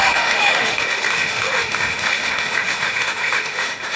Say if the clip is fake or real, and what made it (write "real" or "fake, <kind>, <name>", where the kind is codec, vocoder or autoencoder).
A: fake, autoencoder, DAC-VAE